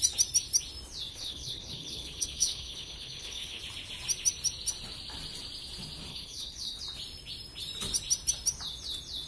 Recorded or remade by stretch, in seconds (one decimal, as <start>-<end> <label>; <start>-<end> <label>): 0.0-1.1 recorded; 1.1-3.6 remade; 3.6-6.1 recorded; 6.1-6.8 remade; 6.8-9.3 recorded